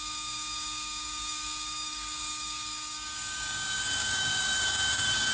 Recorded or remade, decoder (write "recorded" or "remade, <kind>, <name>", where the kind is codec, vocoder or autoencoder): remade, codec, DAC